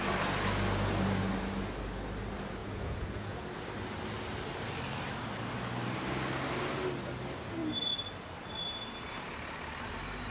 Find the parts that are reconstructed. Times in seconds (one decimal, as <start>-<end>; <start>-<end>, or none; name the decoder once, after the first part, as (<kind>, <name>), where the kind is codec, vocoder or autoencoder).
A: 2.6-3.4 (vocoder, Vocos)